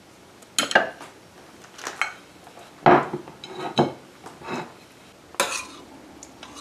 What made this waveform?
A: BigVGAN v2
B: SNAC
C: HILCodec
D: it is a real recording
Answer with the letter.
D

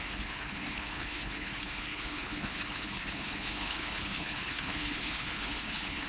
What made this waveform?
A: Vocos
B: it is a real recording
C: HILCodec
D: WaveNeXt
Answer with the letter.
C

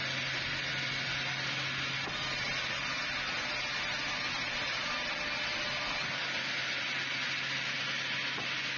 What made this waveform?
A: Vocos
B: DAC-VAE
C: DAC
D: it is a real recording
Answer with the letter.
D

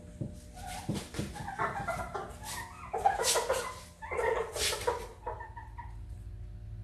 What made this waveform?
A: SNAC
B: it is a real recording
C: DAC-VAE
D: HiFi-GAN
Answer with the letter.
B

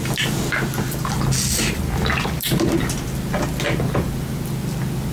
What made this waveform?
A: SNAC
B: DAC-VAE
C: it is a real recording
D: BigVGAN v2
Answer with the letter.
C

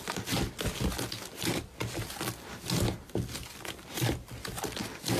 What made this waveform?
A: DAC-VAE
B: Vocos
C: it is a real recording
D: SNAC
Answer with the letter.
C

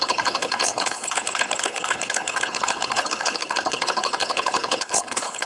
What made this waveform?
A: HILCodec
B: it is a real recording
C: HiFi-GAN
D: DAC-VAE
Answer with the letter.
A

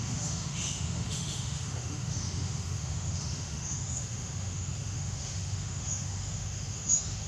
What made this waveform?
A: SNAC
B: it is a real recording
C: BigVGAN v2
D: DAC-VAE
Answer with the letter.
D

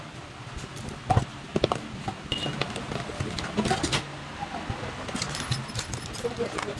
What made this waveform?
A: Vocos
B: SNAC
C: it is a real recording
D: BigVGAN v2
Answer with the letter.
C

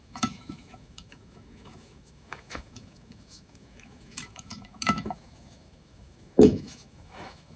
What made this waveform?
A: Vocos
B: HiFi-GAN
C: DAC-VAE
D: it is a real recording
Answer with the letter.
C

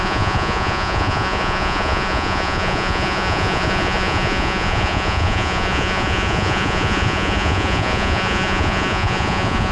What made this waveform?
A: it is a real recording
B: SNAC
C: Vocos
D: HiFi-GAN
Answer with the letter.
C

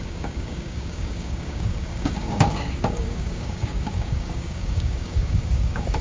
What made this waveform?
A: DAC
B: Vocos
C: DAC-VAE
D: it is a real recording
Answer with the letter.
A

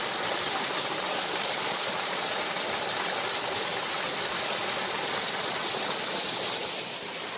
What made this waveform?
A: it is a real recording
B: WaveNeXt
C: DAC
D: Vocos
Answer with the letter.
A